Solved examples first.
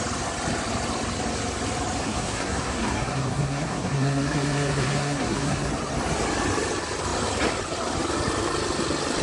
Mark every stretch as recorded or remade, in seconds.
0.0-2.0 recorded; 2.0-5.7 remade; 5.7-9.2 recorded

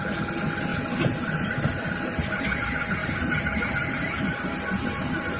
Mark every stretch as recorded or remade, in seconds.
0.0-5.4 recorded

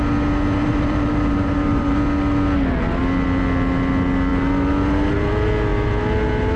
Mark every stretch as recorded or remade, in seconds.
0.0-0.6 recorded; 0.6-2.0 remade; 2.0-6.6 recorded